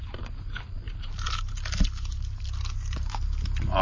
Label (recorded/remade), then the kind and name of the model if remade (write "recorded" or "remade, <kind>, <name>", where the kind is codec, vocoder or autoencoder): recorded